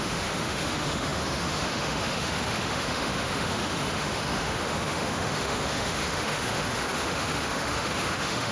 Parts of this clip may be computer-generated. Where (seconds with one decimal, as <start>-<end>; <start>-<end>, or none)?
0.0-8.5